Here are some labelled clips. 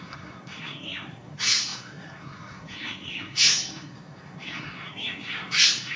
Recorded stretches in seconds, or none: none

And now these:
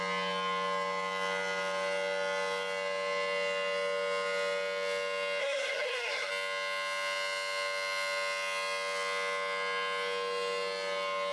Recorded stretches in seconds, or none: 0.0-5.4; 6.3-11.3

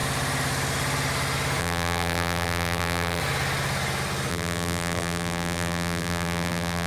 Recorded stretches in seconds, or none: 0.0-1.6; 3.2-4.3

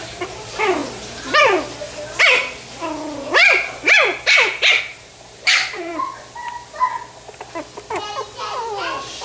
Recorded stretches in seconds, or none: 0.8-4.8; 5.9-8.6

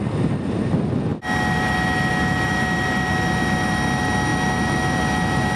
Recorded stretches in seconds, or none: 0.0-5.6

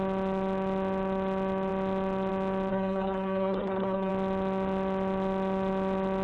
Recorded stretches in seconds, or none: 0.0-2.7; 4.1-6.2

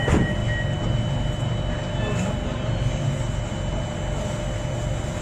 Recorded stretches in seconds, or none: 0.0-5.2